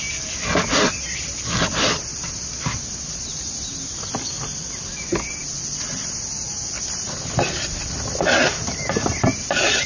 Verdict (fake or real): real